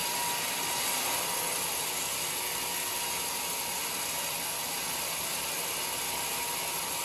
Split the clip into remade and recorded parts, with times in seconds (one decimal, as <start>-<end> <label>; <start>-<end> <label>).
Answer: 0.0-7.0 recorded